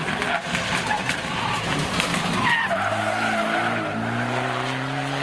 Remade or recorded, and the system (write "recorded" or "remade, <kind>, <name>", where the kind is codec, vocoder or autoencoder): recorded